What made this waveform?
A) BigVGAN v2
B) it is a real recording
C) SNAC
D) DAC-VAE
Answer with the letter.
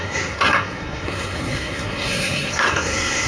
C